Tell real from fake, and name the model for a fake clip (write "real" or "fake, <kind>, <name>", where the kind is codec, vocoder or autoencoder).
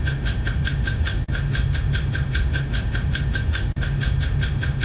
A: fake, autoencoder, DAC-VAE